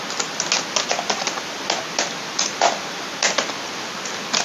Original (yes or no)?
yes